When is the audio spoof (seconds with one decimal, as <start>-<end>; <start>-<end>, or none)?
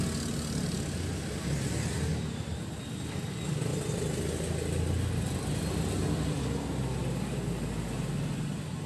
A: none